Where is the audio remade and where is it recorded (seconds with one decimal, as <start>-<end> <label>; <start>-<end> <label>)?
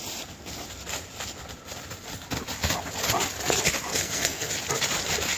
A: 0.0-3.9 recorded; 3.9-4.5 remade; 4.5-5.4 recorded